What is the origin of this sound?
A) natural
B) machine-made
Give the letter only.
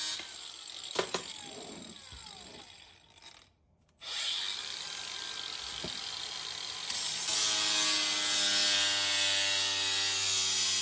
A